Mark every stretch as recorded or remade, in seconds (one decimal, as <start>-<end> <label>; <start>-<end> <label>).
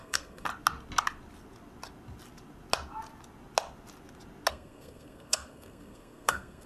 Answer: 0.0-0.5 remade; 0.5-4.5 recorded; 4.5-6.7 remade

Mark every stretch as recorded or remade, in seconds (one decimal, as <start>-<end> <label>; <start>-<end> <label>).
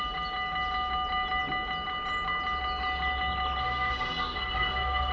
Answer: 0.0-3.6 recorded; 3.6-5.1 remade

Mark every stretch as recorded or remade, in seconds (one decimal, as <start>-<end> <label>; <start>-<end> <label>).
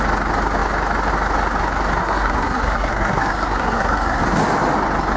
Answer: 0.0-2.0 recorded; 2.0-4.2 remade; 4.2-5.2 recorded